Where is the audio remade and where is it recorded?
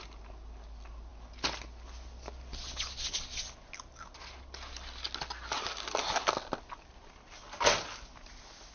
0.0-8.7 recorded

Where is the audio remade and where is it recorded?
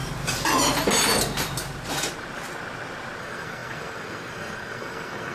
0.0-3.2 recorded; 3.2-5.3 remade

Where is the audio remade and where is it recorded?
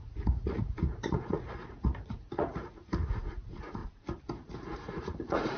0.0-3.8 remade; 3.8-4.5 recorded; 4.5-5.6 remade